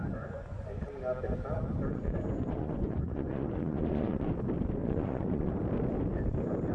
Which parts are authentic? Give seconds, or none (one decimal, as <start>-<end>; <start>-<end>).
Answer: 0.8-1.9; 4.3-4.8; 5.5-6.7